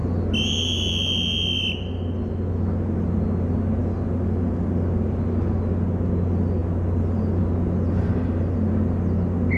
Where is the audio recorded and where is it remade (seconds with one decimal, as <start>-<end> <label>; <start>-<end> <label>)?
0.0-9.6 recorded